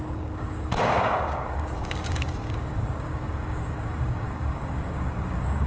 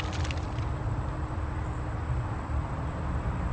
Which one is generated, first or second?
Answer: first